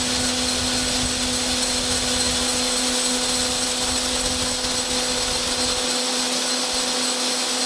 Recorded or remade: recorded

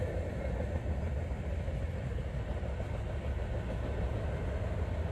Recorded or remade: recorded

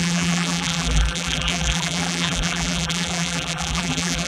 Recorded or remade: remade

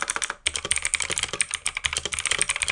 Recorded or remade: recorded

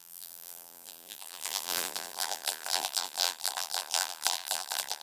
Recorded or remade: remade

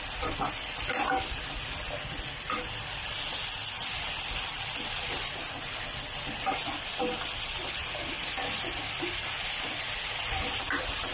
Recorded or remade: remade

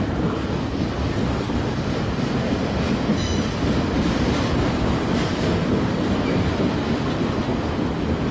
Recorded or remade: recorded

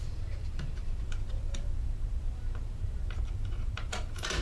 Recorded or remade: remade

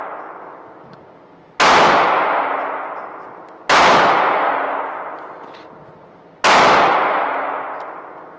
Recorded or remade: recorded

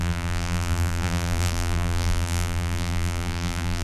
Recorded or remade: remade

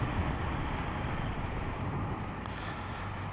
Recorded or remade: recorded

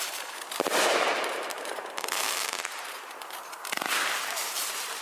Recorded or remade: remade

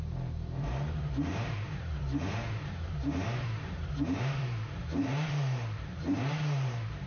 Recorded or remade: remade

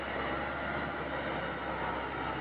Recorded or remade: recorded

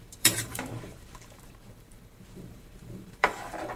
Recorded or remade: remade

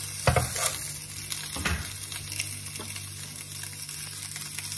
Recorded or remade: recorded